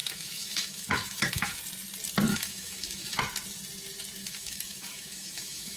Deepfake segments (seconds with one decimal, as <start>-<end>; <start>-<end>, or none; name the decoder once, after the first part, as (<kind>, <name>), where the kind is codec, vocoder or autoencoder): 0.0-1.6 (autoencoder, DAC-VAE); 2.3-3.2; 4.2-5.8